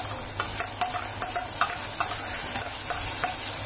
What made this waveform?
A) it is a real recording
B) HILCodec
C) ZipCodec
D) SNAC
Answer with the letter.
A